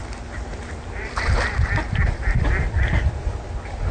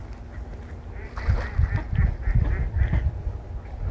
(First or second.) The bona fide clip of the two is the second